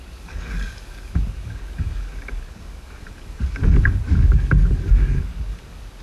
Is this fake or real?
fake